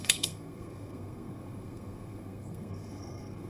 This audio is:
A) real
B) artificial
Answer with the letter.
B